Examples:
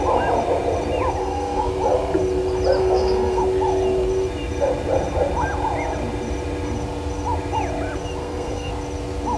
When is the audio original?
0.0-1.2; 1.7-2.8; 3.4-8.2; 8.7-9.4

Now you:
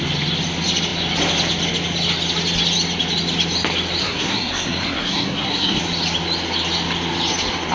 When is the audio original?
0.0-4.0; 5.8-7.7